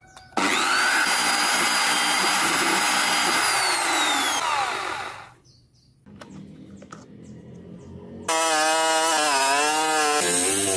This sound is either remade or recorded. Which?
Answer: recorded